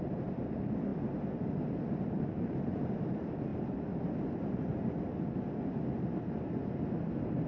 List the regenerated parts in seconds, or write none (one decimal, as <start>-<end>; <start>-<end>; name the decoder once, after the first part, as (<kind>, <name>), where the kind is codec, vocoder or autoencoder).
none